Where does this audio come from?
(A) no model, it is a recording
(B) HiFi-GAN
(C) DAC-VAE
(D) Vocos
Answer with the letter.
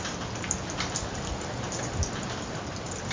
A